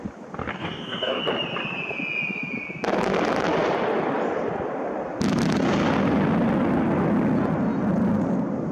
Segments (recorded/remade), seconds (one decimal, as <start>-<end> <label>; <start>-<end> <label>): 0.0-0.5 recorded; 0.5-1.2 remade; 1.2-8.7 recorded